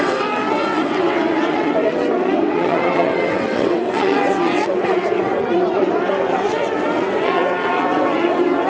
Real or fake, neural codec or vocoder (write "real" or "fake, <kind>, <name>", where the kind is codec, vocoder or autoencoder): fake, vocoder, WaveNeXt